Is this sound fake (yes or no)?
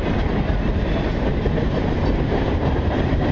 yes